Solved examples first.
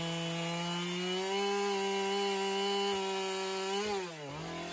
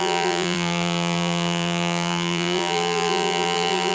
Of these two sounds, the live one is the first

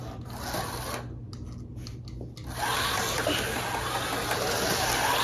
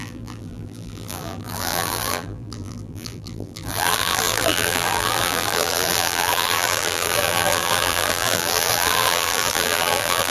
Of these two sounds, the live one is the first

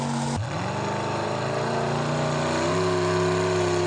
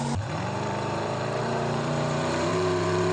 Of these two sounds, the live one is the first